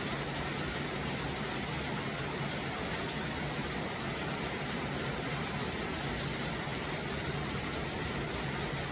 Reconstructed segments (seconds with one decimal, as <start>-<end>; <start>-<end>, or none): 6.7-8.1

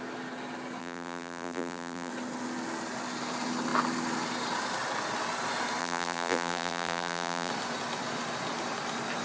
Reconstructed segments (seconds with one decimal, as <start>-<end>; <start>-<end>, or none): 0.8-2.1; 5.8-7.5

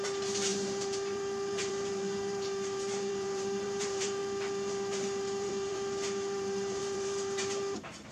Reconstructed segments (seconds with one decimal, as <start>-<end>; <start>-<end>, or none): 0.0-4.2; 4.7-8.1

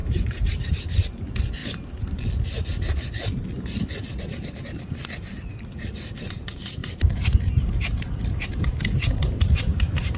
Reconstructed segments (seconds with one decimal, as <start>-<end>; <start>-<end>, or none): 0.0-0.7; 6.8-8.1; 9.7-10.2

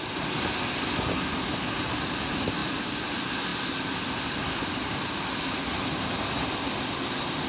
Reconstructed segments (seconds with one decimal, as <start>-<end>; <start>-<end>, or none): none

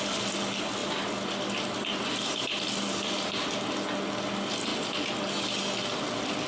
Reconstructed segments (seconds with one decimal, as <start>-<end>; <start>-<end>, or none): 0.8-2.4; 4.7-5.6

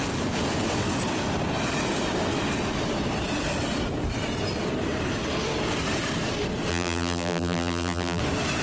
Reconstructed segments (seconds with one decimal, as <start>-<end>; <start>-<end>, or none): 6.7-8.2